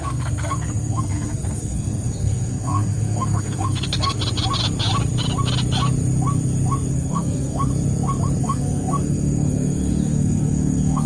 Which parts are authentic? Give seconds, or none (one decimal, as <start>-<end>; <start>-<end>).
4.2-6.9; 7.7-8.4